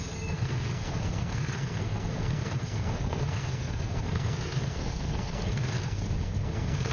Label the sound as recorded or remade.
remade